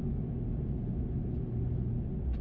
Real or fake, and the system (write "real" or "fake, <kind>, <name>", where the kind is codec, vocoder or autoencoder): real